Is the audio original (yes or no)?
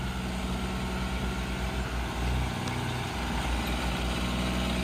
yes